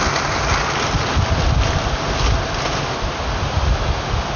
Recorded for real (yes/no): yes